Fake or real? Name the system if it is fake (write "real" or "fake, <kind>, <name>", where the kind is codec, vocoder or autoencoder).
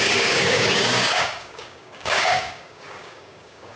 fake, codec, DAC